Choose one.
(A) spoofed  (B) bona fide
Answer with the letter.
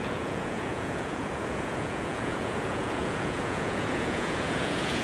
A